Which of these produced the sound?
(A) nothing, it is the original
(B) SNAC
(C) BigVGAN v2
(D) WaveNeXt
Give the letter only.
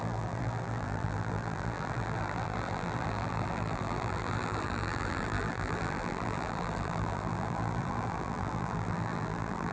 C